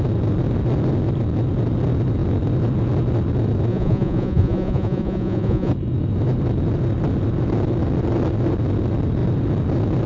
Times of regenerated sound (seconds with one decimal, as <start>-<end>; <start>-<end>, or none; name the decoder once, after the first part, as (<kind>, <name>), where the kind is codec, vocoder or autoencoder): 3.7-5.7 (vocoder, Vocos)